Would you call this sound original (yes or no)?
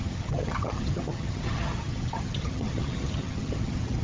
no